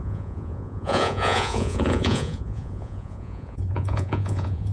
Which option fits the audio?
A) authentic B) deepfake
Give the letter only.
B